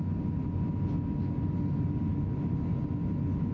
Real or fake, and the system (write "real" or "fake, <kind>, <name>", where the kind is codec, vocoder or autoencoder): real